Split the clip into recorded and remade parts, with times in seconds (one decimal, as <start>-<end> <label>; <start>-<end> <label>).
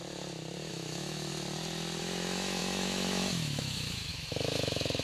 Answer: 0.0-0.7 recorded; 0.7-1.3 remade; 1.3-2.0 recorded; 2.0-5.0 remade